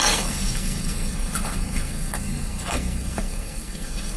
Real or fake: fake